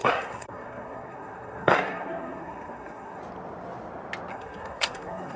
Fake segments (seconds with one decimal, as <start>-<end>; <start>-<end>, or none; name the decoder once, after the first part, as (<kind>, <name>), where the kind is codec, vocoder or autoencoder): 0.0-3.2 (codec, SNAC); 4.3-5.4